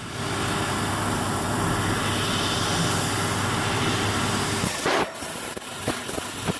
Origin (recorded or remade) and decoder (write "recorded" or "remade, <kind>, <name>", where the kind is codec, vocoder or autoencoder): recorded